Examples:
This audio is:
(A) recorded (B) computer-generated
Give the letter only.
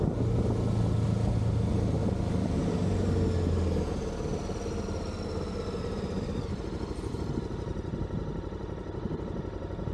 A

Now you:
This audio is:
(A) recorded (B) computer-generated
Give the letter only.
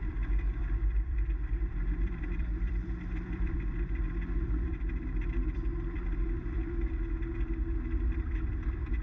B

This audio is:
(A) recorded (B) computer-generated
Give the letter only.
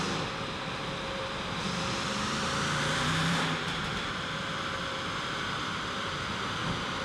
B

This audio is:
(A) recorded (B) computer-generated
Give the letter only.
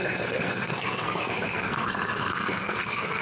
B